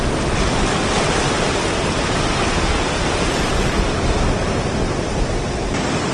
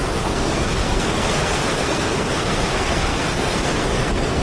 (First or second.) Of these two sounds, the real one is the first